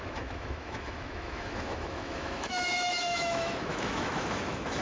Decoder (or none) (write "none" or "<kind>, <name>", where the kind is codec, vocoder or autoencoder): autoencoder, DAC-VAE